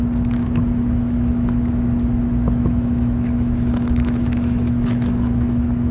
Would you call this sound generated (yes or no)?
yes